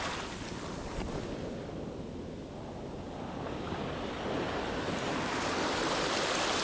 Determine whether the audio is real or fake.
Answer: real